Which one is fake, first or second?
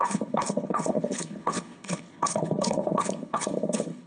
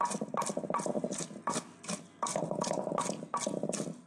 first